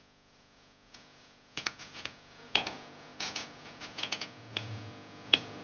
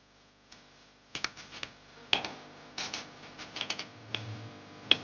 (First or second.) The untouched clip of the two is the second